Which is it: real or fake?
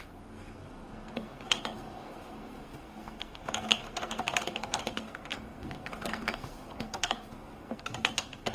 fake